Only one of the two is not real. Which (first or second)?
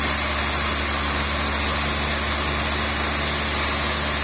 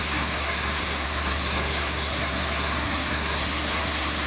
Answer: second